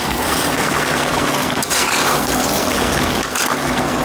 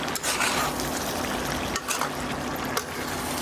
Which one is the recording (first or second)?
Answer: second